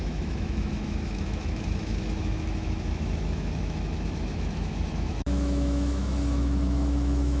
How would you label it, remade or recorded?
remade